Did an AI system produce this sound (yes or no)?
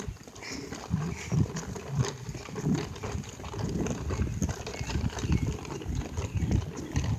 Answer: no